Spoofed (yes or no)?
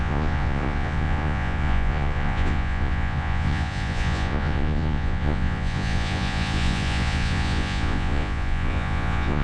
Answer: yes